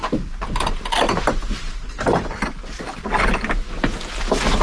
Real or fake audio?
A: real